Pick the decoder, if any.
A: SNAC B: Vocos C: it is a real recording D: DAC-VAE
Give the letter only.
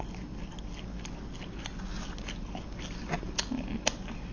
C